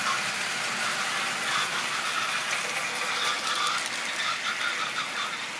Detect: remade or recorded recorded